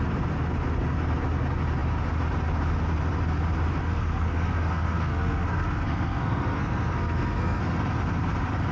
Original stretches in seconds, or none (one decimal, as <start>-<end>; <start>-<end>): 0.0-3.8; 7.6-8.7